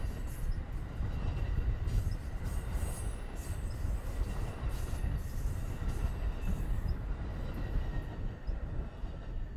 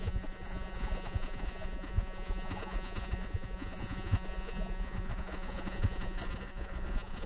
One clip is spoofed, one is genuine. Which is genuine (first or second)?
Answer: first